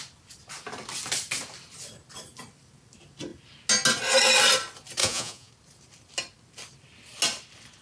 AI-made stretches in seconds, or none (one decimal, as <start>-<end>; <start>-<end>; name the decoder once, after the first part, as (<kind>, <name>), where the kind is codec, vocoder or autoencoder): 5.0-5.5 (vocoder, Vocos)